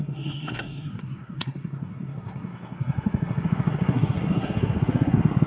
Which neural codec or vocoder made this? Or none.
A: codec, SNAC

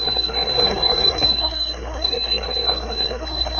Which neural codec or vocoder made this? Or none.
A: codec, SNAC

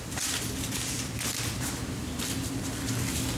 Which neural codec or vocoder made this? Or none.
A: none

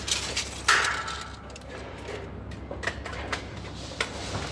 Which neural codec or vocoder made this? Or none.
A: none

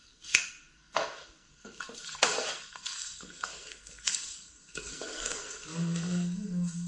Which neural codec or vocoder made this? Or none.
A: codec, SNAC